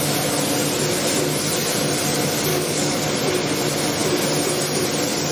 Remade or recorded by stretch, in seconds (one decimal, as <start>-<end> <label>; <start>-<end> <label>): 0.0-2.5 recorded; 2.5-3.0 remade; 3.0-5.3 recorded